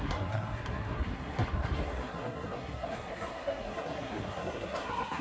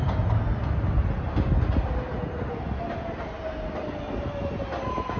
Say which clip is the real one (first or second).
second